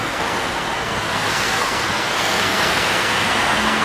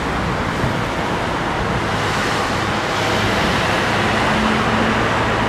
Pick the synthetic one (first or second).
first